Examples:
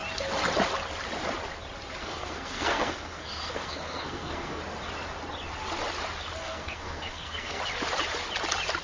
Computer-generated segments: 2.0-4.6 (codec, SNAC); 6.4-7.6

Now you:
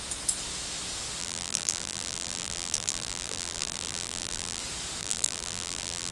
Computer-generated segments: 1.2-4.6 (vocoder, BigVGAN v2); 5.0-6.1

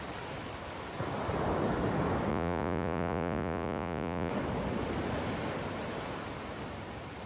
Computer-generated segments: 2.3-4.3 (vocoder, Vocos)

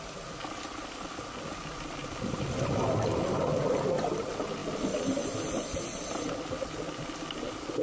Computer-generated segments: none

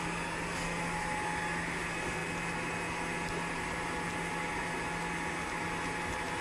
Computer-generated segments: none